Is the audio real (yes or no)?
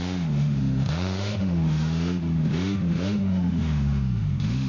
no